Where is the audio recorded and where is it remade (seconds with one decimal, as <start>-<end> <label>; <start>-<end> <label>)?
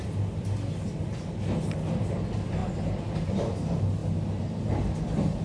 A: 0.0-5.4 recorded